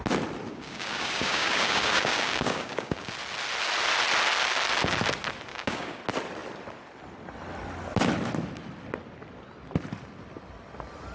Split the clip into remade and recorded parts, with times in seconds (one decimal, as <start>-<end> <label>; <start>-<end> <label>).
0.0-0.5 recorded; 0.5-3.1 remade; 3.1-5.5 recorded; 5.5-6.0 remade; 6.0-11.1 recorded